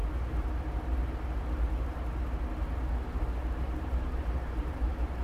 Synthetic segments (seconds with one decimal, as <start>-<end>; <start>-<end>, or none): 3.1-5.2